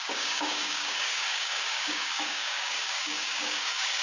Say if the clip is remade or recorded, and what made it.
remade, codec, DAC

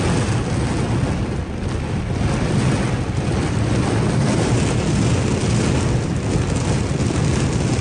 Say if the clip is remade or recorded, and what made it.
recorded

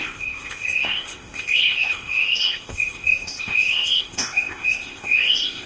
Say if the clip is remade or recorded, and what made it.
remade, codec, ZipCodec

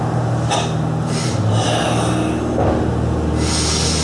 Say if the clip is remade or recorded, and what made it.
recorded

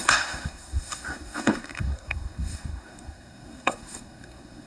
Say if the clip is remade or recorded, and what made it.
remade, codec, SNAC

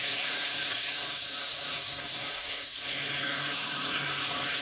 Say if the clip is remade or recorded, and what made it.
remade, codec, SNAC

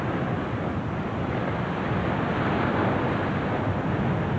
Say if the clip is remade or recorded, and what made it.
recorded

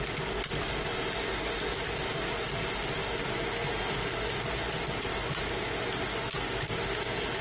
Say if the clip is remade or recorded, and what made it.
recorded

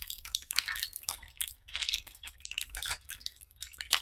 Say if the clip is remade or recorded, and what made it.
remade, codec, SNAC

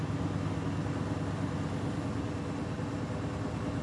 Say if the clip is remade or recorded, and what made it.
recorded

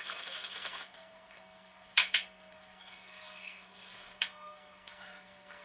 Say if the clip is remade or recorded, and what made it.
remade, codec, SNAC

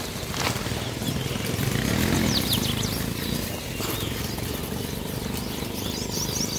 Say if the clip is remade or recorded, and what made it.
recorded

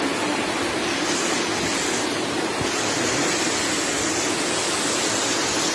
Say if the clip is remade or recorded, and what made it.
recorded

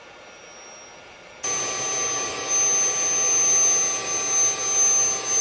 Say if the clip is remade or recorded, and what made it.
recorded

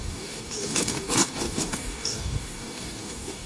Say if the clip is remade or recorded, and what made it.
remade, codec, DAC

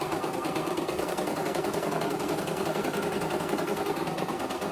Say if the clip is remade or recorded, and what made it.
remade, codec, SNAC